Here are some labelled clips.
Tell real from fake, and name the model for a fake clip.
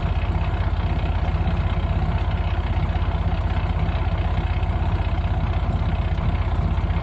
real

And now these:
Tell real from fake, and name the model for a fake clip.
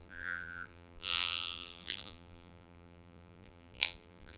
fake, vocoder, BigVGAN v2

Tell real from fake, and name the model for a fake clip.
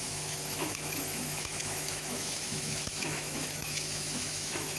fake, autoencoder, DAC-VAE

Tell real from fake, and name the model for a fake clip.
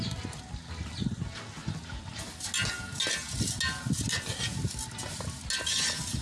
real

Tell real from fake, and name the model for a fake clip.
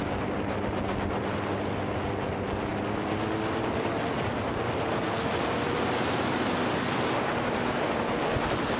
real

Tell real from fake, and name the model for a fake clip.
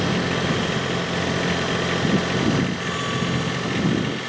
real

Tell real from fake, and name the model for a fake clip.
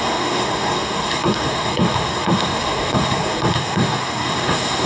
fake, codec, SNAC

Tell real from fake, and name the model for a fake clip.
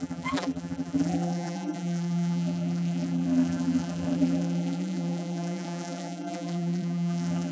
fake, vocoder, BigVGAN v2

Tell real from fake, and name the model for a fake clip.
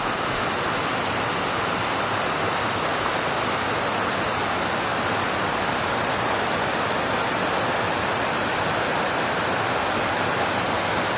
real